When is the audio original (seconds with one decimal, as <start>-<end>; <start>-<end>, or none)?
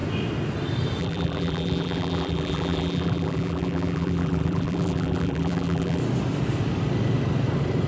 0.0-1.0; 6.0-7.9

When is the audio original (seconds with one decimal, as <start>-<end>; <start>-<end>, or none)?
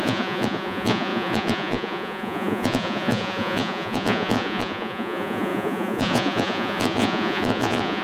none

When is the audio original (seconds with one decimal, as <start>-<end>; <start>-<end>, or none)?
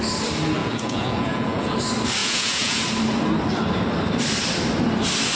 0.0-0.6; 1.7-2.2; 2.8-5.4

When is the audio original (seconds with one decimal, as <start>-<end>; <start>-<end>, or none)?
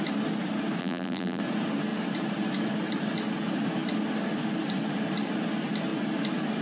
0.0-0.8; 1.4-6.6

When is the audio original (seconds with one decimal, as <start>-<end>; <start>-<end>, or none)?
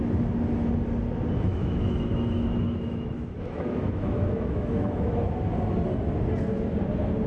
0.0-1.5; 5.2-7.3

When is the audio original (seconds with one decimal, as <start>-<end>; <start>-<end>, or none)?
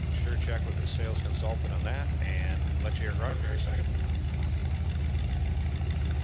0.0-3.3; 3.8-6.2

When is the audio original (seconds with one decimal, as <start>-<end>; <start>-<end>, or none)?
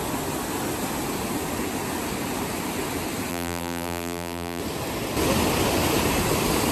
0.0-3.3; 4.6-6.7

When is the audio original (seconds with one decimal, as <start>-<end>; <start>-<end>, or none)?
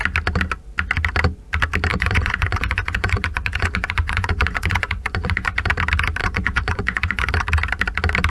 0.0-1.9; 5.7-6.2; 7.3-8.3